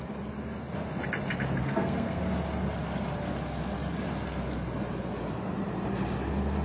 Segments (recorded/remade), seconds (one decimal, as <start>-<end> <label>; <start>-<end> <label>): 0.0-1.6 recorded; 1.6-2.2 remade; 2.2-6.6 recorded